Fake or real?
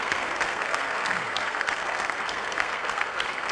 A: fake